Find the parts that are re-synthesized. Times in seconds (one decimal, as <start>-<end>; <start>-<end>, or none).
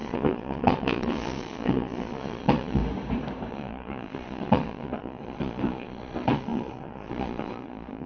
0.0-2.8; 3.5-8.1